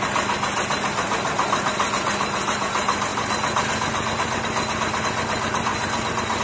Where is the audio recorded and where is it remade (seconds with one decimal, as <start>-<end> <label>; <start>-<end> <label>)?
0.0-6.4 recorded